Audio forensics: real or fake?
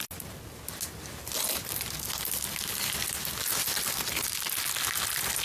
real